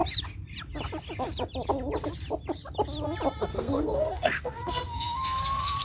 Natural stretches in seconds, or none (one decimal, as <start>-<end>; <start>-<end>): 0.0-3.5